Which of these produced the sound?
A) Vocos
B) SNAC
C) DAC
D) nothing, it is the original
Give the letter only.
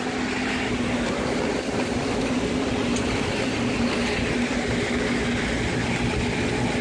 D